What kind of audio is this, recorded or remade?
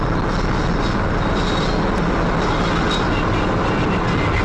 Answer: recorded